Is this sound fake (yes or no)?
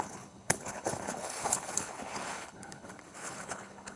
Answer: yes